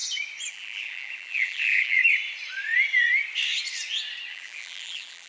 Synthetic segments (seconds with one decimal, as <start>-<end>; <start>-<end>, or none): 0.5-2.0; 4.3-5.3